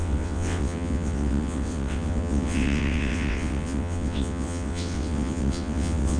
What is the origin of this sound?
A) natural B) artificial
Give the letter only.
B